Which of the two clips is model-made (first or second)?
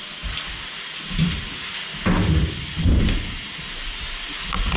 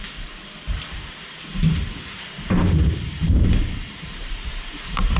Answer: second